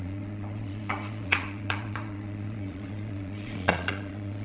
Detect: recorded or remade remade